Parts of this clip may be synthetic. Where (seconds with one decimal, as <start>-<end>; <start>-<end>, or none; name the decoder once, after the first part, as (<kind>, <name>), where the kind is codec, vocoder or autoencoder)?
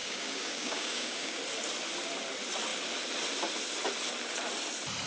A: 0.0-1.4 (codec, DAC)